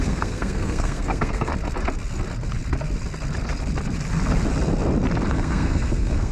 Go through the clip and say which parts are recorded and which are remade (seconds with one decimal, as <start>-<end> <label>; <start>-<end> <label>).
0.0-1.5 remade; 1.5-5.3 recorded; 5.3-6.3 remade